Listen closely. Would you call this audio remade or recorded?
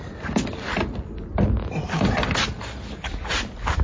recorded